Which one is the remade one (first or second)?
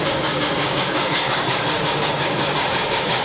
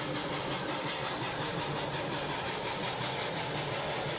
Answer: first